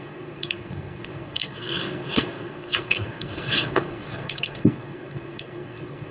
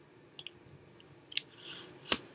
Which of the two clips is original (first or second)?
second